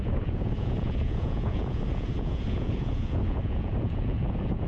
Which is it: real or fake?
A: fake